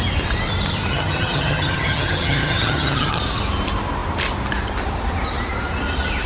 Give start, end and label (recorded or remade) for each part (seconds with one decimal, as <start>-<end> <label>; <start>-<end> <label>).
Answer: 0.0-0.9 recorded; 0.9-3.2 remade; 3.2-6.3 recorded